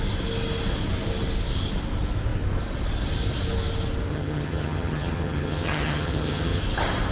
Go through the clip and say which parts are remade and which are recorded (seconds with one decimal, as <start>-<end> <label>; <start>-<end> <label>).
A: 0.0-4.1 recorded; 4.1-6.6 remade; 6.6-7.1 recorded